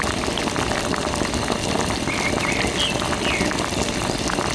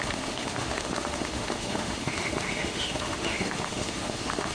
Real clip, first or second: first